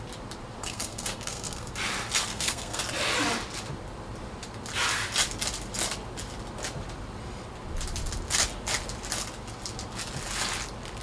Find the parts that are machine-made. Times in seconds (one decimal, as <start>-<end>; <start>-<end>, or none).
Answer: 0.6-1.7; 2.3-2.8